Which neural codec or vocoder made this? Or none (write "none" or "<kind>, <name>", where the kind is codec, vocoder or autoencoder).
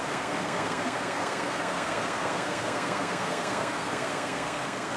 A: codec, SNAC